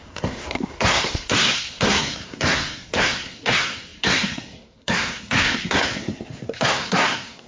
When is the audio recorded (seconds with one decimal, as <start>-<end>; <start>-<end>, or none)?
none